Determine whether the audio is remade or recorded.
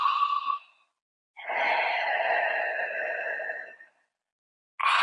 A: recorded